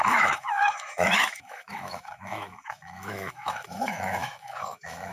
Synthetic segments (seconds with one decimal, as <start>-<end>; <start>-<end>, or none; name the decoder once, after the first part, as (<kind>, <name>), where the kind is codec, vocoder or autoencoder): 0.0-5.1 (autoencoder, DAC-VAE)